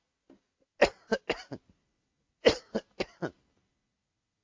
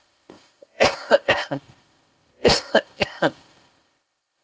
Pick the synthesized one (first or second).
second